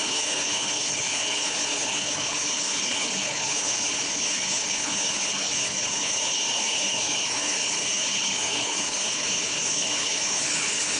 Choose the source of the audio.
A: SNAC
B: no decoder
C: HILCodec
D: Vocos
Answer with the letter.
C